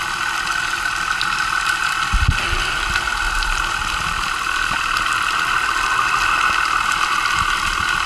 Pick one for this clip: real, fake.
real